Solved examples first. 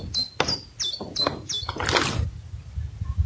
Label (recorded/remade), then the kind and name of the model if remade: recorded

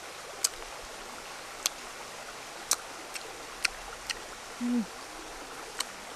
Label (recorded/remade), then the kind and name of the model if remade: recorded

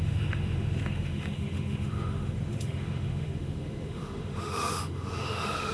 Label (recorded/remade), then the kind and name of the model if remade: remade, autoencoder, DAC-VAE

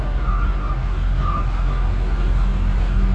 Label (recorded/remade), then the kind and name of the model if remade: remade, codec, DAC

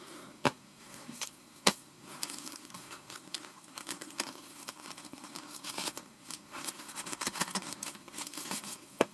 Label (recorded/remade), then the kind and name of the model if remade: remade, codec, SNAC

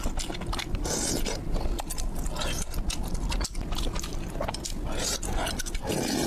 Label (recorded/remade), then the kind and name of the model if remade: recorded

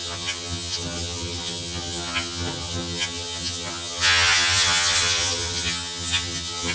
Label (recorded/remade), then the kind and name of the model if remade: remade, vocoder, HiFi-GAN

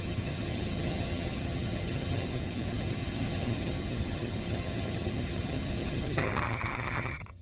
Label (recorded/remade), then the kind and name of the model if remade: remade, vocoder, HiFi-GAN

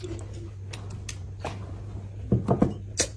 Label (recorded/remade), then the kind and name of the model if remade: recorded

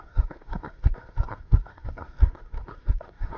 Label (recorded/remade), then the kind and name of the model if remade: remade, codec, SNAC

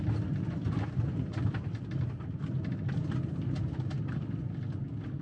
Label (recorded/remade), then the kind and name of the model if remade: recorded